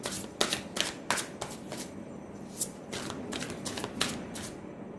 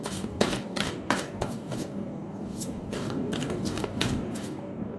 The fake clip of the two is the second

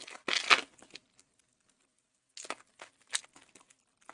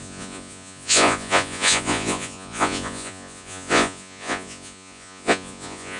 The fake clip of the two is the second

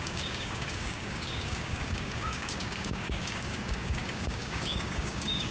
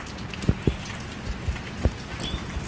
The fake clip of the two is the first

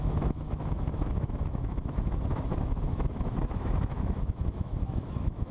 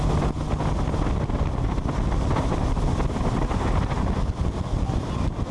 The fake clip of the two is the first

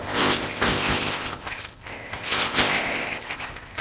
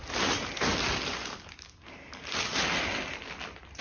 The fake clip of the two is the first